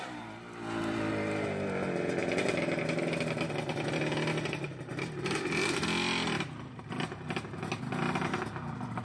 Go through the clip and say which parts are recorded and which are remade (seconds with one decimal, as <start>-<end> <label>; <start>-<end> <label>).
0.0-9.0 recorded